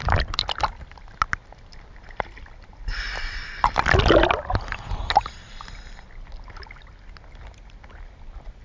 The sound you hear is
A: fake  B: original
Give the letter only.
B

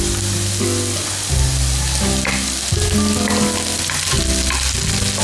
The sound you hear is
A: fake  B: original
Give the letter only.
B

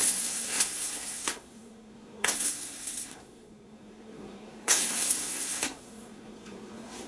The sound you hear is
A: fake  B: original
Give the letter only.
A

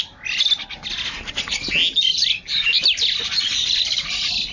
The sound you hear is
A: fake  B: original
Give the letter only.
B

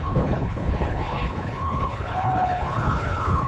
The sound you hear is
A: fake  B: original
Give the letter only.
A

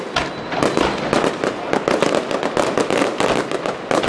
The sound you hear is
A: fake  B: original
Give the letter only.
B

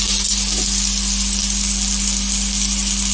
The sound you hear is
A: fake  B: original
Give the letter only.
B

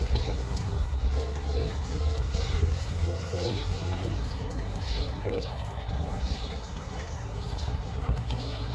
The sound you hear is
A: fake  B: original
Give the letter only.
A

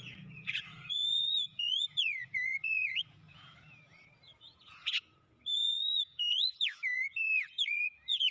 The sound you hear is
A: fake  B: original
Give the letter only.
A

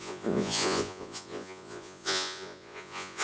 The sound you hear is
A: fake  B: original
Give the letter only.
A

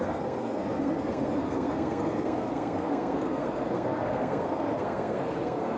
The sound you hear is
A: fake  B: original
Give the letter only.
A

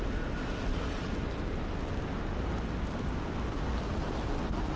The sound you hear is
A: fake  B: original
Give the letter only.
B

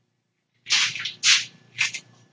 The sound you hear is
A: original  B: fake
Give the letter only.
A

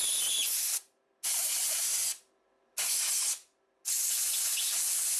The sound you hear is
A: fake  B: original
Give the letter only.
B